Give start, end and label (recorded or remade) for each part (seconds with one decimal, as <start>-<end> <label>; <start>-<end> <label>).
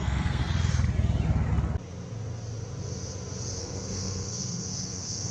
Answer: 0.0-0.4 remade; 0.4-3.6 recorded; 3.6-5.3 remade